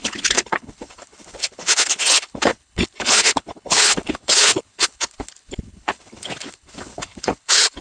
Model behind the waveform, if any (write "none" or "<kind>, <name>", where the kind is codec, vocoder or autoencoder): codec, HILCodec